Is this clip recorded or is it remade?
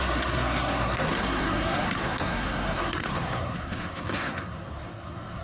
remade